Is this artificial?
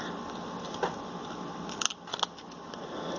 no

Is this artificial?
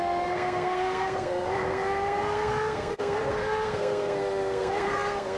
yes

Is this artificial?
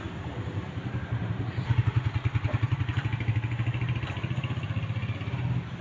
no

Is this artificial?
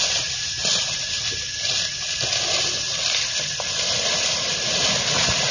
no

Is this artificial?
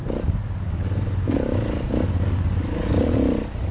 no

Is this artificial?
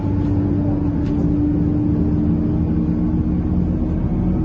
no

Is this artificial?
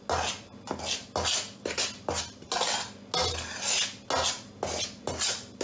no